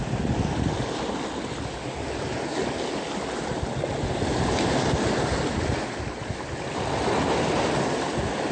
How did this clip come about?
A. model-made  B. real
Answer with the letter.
B